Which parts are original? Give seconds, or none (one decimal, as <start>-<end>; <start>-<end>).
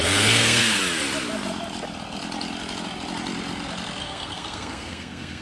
0.8-4.0